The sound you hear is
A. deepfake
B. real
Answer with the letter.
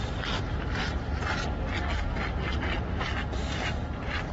B